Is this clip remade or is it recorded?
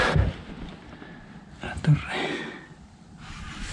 recorded